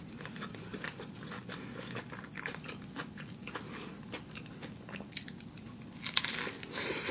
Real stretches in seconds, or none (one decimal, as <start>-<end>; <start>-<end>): 0.0-7.1